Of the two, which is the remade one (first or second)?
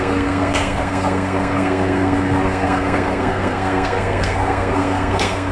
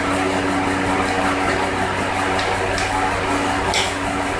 first